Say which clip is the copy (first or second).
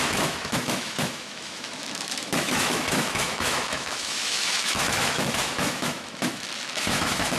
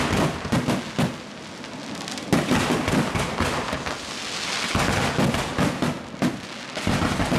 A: first